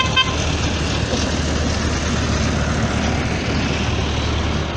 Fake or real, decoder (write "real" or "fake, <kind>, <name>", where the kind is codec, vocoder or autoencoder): real